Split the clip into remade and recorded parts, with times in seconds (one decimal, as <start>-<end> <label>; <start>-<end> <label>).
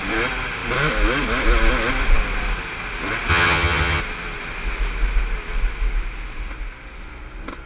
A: 0.0-3.3 recorded; 3.3-4.0 remade; 4.0-7.7 recorded